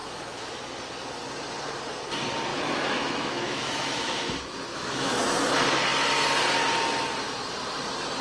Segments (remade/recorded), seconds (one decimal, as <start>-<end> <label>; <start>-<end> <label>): 0.0-0.6 remade; 0.6-2.5 recorded; 2.5-5.2 remade; 5.2-8.2 recorded